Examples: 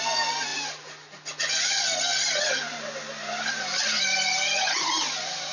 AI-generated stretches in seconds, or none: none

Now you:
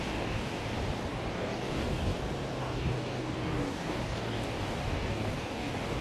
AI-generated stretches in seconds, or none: 0.0-0.6; 1.3-2.1; 2.6-6.0